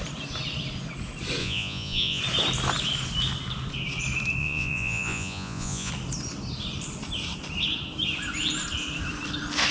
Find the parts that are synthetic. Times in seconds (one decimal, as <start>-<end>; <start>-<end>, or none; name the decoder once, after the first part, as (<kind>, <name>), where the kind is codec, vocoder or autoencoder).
1.4-2.2 (vocoder, Vocos); 4.4-5.9

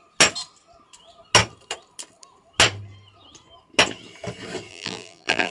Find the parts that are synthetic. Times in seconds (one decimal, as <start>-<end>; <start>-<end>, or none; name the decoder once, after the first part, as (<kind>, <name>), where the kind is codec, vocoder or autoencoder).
4.7-5.5 (vocoder, BigVGAN v2)

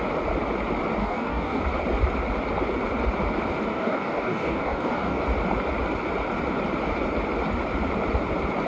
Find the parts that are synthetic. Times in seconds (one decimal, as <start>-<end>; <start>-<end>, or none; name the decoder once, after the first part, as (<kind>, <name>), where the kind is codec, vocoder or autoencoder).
1.0-1.6 (codec, DAC); 3.7-5.2

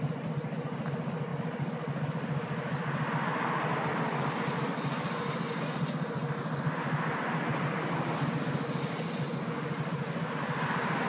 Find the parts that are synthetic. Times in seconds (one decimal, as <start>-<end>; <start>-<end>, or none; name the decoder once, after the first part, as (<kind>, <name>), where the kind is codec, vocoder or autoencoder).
none

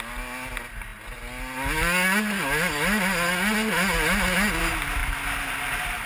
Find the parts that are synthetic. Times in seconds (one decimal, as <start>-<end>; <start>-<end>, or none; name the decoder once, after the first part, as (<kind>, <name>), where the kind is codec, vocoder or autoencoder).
none